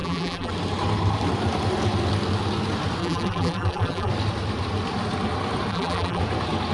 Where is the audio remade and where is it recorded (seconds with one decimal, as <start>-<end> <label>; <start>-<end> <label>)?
0.0-0.5 remade; 0.5-3.0 recorded; 3.0-4.1 remade; 4.1-5.7 recorded; 5.7-6.2 remade; 6.2-6.7 recorded